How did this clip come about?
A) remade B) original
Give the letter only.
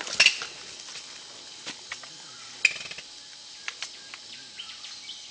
B